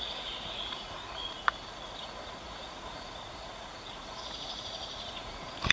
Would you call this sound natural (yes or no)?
no